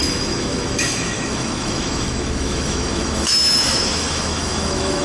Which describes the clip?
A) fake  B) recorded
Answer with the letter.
A